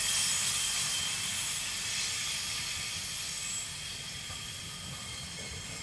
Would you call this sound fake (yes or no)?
no